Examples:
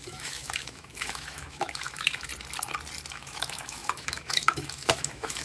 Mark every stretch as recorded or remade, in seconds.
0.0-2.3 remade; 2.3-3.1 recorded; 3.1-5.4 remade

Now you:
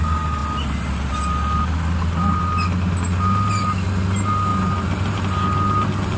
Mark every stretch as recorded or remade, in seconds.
0.0-4.5 recorded; 4.5-5.2 remade; 5.2-6.2 recorded

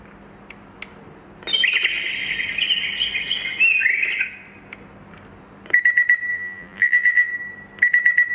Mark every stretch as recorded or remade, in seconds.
0.0-6.3 recorded; 6.3-7.3 remade; 7.3-8.3 recorded